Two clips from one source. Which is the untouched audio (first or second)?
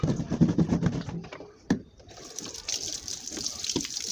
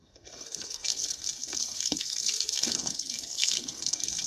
first